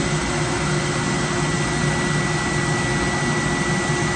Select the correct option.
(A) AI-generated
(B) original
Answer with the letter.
B